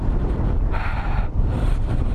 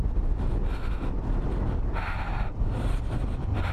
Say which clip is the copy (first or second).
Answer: first